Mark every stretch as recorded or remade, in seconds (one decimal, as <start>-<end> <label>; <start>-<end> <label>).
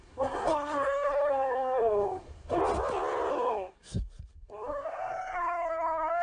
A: 0.0-2.6 remade; 2.6-3.3 recorded; 3.3-6.2 remade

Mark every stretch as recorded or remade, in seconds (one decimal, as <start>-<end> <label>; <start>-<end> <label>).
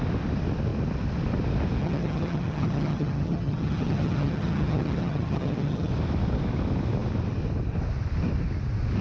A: 0.0-1.8 recorded; 1.8-5.9 remade; 5.9-9.0 recorded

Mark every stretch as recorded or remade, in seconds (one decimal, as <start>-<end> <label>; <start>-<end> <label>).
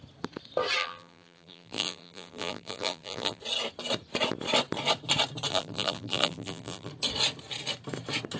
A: 0.0-0.8 recorded; 0.8-3.4 remade; 3.4-5.5 recorded; 5.5-6.9 remade; 6.9-8.4 recorded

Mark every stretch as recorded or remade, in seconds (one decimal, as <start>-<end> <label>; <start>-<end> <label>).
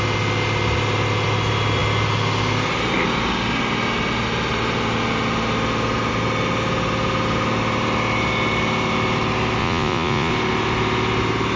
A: 0.0-9.6 recorded; 9.6-10.3 remade; 10.3-11.6 recorded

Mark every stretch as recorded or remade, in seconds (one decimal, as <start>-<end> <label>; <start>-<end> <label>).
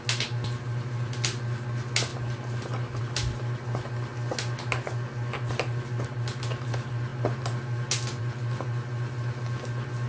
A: 0.0-10.1 recorded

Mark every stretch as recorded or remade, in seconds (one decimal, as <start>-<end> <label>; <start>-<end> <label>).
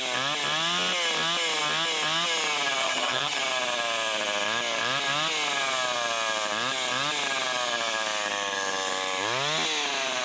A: 0.0-2.8 recorded; 2.8-3.4 remade; 3.4-10.2 recorded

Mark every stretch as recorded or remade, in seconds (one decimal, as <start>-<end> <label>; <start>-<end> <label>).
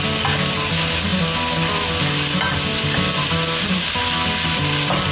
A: 0.0-5.1 recorded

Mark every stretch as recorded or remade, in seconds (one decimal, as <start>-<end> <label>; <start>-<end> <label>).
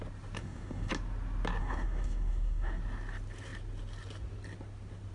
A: 0.0-0.4 recorded; 0.4-0.9 remade; 0.9-1.6 recorded; 1.6-2.8 remade; 2.8-5.1 recorded